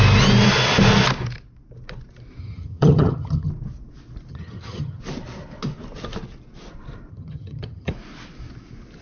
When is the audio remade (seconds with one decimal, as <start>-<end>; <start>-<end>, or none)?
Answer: 2.4-3.5; 4.3-5.0; 7.1-7.9